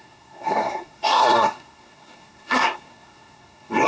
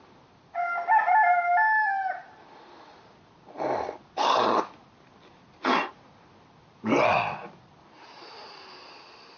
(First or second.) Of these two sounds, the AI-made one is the first